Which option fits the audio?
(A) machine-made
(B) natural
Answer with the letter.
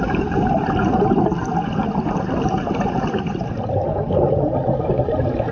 B